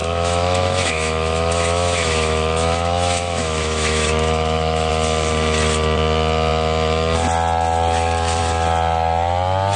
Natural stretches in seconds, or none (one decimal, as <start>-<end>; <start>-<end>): 4.9-9.8